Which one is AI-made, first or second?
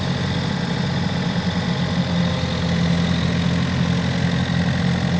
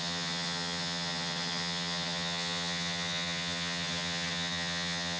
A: second